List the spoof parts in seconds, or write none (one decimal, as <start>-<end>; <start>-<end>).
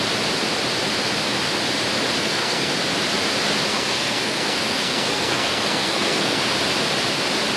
2.2-2.7; 3.7-6.4